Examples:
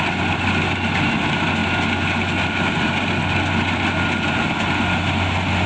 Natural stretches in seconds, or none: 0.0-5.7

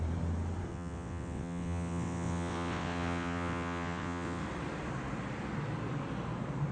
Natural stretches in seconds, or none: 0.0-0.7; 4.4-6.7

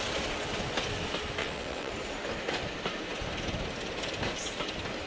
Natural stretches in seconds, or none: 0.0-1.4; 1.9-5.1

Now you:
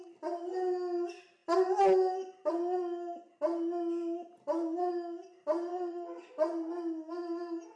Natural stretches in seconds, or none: 0.0-5.7; 6.3-7.8

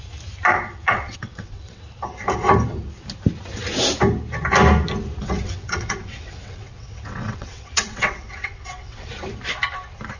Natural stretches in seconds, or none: 0.0-0.5; 1.8-5.2; 9.1-10.2